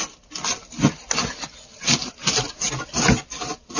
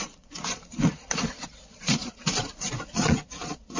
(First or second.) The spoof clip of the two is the second